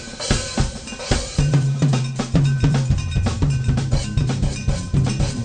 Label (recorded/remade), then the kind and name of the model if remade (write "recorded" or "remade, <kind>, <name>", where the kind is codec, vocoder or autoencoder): remade, vocoder, BigVGAN v2